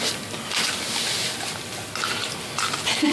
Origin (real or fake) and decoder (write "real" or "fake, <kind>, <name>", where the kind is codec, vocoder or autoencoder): real